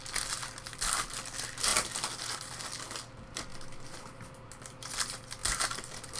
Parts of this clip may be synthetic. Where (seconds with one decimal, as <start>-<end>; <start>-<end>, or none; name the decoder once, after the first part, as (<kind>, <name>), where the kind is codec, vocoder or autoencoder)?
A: none